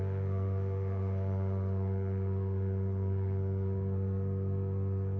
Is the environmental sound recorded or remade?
remade